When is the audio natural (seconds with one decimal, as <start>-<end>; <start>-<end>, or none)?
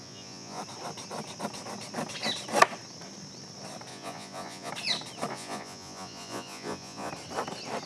0.6-3.9; 4.7-5.3; 7.1-7.9